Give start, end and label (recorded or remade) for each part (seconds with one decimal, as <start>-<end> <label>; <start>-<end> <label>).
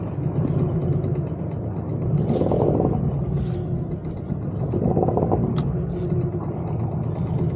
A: 0.0-7.6 recorded